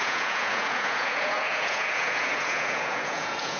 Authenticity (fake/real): fake